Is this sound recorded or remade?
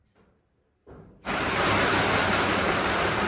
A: recorded